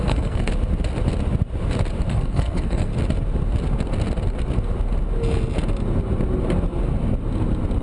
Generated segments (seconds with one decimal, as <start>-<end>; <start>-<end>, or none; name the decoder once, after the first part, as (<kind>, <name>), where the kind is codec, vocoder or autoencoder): 0.0-0.5 (codec, SNAC); 2.1-2.9